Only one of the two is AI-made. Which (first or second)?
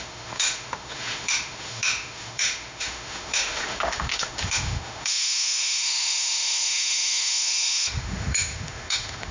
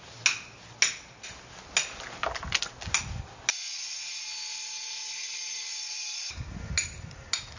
first